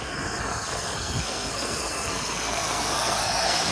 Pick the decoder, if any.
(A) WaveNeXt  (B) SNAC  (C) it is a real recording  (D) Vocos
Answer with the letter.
B